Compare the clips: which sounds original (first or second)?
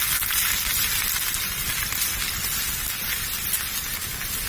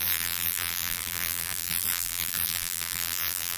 first